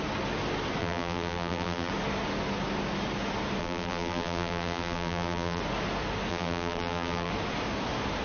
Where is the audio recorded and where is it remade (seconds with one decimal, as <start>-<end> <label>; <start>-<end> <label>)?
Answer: 0.0-0.8 recorded; 0.8-1.9 remade; 1.9-3.6 recorded; 3.6-5.6 remade; 5.6-6.3 recorded; 6.3-7.3 remade; 7.3-8.2 recorded